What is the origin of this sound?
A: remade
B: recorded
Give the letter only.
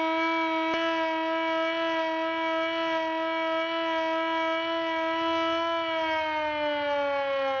B